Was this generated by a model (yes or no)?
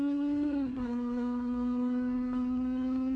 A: yes